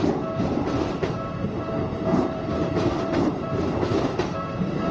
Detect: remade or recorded remade